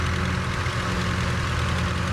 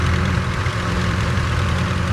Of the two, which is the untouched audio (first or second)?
first